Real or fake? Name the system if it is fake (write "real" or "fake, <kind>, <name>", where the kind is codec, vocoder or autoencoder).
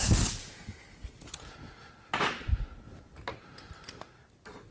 real